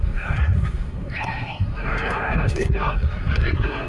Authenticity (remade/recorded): remade